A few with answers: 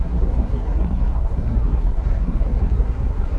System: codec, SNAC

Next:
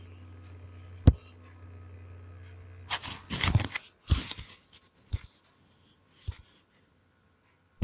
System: none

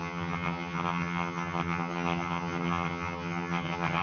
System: vocoder, HiFi-GAN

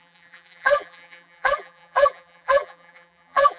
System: vocoder, BigVGAN v2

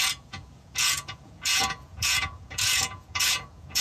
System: vocoder, Vocos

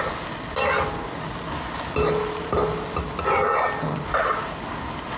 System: none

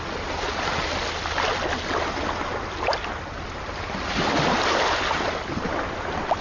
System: none